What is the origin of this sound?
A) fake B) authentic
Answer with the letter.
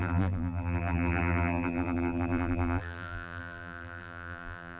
A